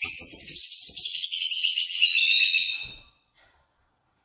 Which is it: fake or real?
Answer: fake